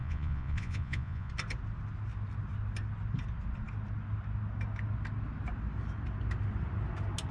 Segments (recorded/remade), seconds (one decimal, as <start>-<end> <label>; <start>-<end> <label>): 0.0-1.3 remade; 1.3-7.3 recorded